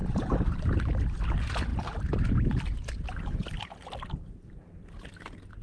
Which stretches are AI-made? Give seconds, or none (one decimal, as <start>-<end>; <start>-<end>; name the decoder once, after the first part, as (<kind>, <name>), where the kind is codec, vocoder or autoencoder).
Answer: 0.0-0.8 (vocoder, BigVGAN v2)